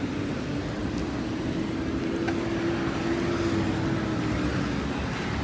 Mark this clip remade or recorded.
recorded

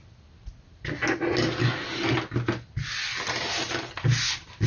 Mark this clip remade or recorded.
recorded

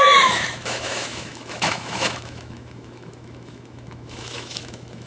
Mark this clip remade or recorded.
remade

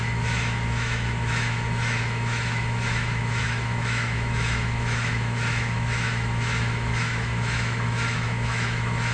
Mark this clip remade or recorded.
remade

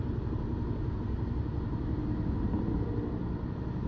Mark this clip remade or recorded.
recorded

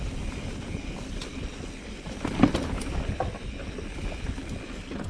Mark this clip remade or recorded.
recorded